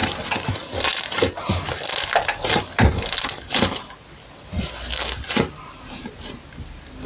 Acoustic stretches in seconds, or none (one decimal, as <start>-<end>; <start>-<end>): 0.5-7.1